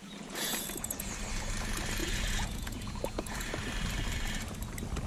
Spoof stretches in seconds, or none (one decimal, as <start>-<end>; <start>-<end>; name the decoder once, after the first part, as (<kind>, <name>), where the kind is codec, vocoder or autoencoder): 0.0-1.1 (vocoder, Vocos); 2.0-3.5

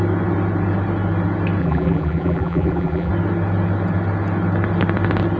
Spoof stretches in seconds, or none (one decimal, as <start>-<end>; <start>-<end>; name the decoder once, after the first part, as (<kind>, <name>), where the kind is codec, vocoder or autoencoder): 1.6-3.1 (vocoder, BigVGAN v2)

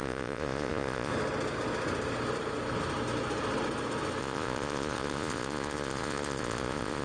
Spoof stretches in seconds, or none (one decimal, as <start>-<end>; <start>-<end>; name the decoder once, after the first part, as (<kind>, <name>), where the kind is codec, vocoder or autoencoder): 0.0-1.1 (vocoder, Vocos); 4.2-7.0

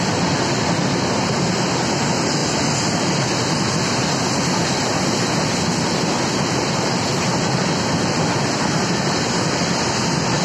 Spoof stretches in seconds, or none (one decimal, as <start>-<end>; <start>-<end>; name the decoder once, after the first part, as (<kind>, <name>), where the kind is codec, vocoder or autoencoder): none